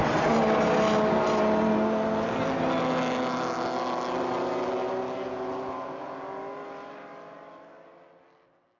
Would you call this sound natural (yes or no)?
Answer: yes